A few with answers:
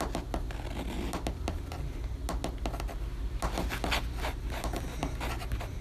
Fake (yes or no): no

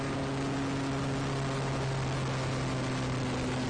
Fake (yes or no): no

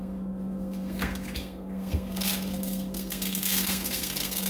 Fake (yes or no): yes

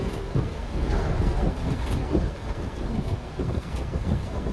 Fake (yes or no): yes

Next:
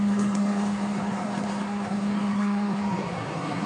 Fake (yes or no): yes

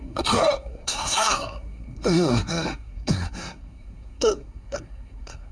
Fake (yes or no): yes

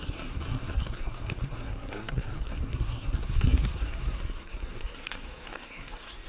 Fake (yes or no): yes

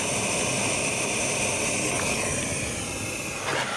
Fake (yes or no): no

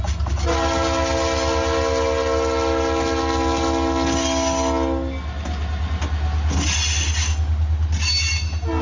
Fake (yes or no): no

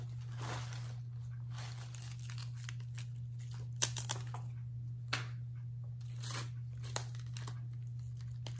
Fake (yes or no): no